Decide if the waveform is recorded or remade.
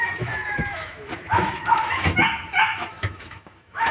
remade